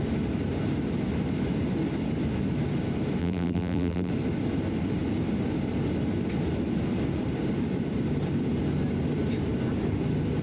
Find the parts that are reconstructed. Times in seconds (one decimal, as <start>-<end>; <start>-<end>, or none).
3.2-4.1